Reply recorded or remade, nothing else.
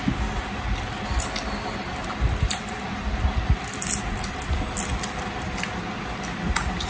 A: recorded